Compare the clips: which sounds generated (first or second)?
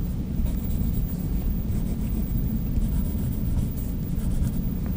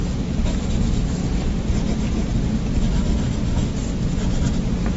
first